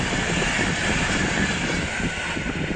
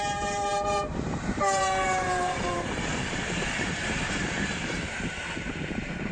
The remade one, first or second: second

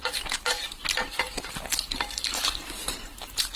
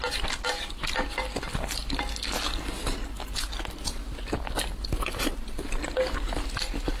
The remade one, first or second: first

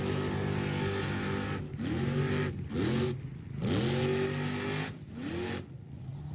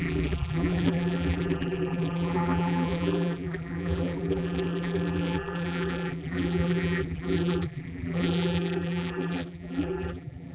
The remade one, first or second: second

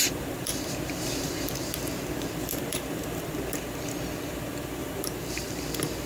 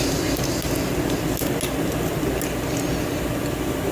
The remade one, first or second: first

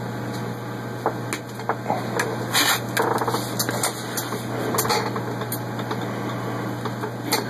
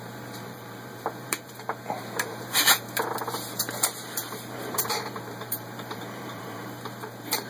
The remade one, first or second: second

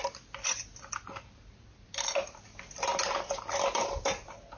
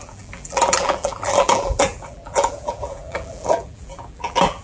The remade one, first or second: second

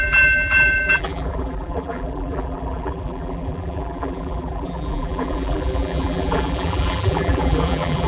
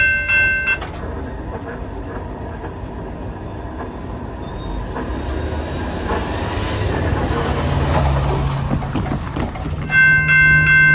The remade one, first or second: first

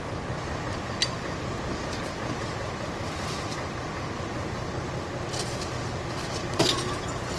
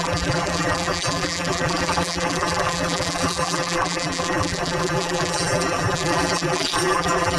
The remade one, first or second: second